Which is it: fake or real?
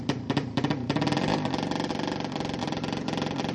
fake